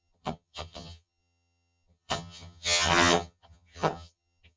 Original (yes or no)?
no